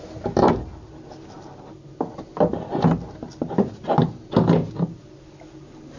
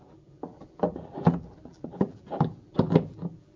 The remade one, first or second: second